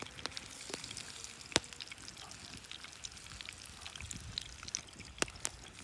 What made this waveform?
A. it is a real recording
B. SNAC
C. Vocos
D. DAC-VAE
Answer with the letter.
A